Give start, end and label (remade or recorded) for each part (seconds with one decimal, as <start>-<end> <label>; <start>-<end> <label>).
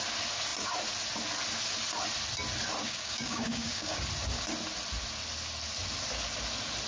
0.0-2.8 recorded; 2.8-4.0 remade; 4.0-6.9 recorded